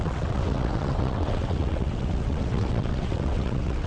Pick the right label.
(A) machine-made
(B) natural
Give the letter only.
A